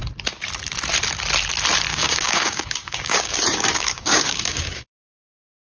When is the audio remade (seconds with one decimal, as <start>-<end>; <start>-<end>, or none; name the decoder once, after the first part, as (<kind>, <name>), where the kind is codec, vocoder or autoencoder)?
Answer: 1.9-5.0 (codec, DAC)